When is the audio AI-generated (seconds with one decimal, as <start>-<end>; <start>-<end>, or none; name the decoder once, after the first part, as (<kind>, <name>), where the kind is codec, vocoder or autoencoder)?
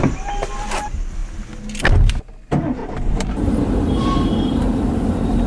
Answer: 2.8-3.5 (vocoder, BigVGAN v2)